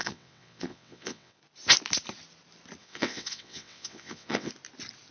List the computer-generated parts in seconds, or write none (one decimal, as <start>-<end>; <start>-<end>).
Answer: 0.0-1.4; 2.8-4.5